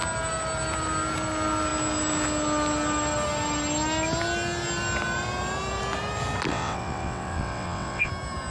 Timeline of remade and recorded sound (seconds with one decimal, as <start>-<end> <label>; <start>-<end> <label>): 0.0-6.5 recorded; 6.5-8.1 remade; 8.1-8.5 recorded